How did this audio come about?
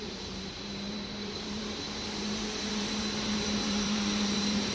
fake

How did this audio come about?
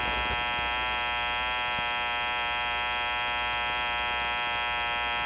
real